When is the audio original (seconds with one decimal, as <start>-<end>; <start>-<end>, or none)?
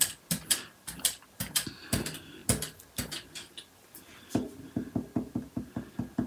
0.0-6.3